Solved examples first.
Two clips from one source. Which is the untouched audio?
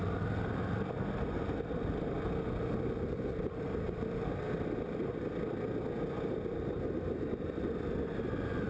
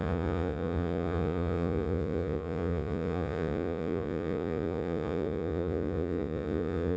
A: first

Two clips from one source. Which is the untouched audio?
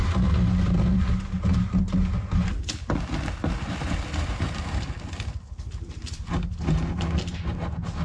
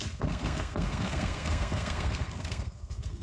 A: first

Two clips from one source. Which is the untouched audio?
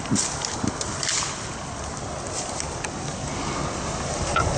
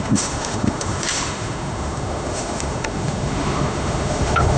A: first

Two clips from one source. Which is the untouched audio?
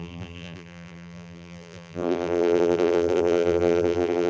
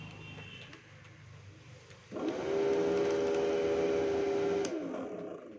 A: second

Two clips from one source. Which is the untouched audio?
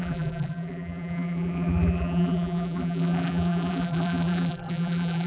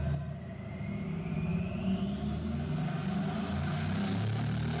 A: second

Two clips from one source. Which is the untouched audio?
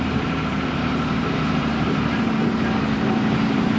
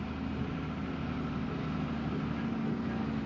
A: second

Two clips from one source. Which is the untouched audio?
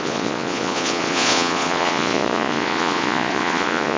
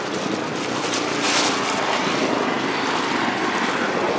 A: second